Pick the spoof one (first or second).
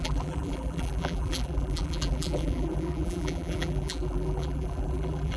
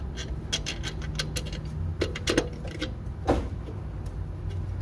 first